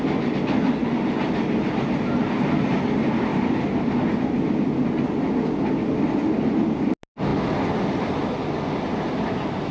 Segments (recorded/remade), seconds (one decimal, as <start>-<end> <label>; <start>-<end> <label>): 0.0-9.7 recorded